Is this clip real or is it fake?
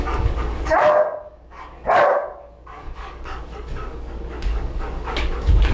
fake